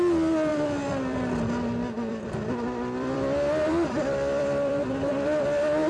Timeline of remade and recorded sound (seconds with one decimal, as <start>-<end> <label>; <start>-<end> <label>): 0.0-0.5 recorded; 0.5-1.2 remade; 1.2-2.1 recorded; 2.1-5.9 remade